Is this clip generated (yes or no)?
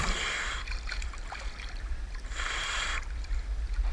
yes